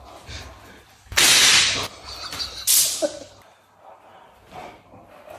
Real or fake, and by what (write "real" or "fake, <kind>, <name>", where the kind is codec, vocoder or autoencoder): real